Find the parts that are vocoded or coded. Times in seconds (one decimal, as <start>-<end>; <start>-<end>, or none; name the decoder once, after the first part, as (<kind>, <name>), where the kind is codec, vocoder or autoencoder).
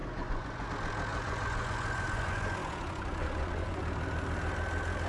0.0-0.7 (vocoder, Vocos); 1.1-3.8